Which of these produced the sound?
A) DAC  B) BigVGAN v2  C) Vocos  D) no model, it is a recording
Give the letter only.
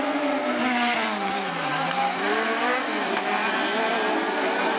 D